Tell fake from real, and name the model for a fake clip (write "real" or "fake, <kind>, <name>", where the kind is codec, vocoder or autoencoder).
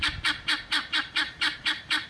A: fake, vocoder, BigVGAN v2